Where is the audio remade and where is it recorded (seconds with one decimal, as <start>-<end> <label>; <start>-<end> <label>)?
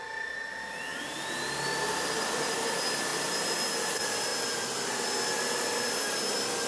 0.0-6.7 recorded